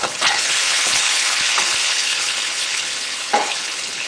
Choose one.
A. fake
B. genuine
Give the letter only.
A